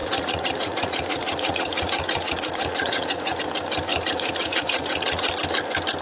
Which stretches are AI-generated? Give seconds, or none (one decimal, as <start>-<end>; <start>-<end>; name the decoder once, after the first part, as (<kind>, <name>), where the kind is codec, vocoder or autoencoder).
0.0-3.4 (vocoder, Vocos); 3.9-5.3